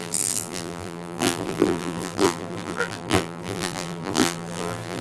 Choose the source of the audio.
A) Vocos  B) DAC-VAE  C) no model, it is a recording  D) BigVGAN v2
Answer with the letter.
D